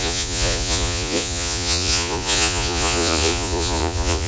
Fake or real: fake